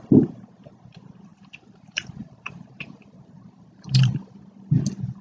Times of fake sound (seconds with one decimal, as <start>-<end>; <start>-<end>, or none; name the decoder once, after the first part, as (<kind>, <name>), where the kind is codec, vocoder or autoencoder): 1.3-4.4 (vocoder, BigVGAN v2)